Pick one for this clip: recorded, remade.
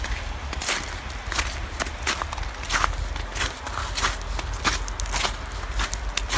recorded